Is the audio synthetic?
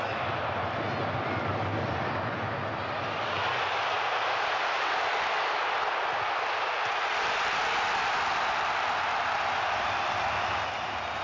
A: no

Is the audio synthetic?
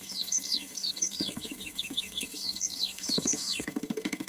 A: yes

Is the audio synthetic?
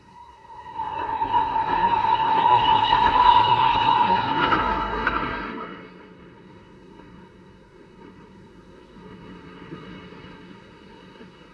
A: yes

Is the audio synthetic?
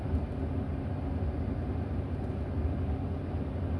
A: no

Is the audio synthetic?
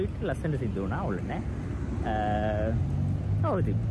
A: no